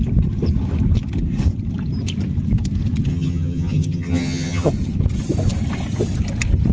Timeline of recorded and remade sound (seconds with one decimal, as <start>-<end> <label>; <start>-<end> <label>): 0.0-3.1 recorded; 3.1-4.7 remade; 4.7-6.7 recorded